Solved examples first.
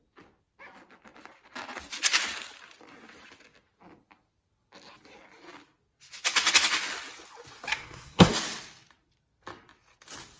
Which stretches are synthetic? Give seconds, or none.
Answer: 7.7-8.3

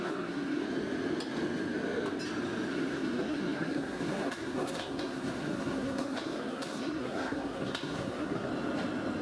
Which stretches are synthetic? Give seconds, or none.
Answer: 0.0-0.6; 2.7-8.5